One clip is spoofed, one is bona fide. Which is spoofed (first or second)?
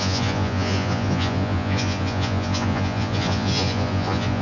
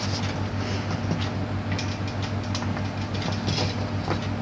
first